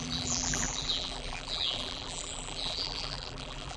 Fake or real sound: fake